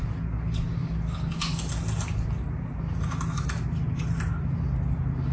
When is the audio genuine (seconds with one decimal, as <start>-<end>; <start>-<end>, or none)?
0.0-5.3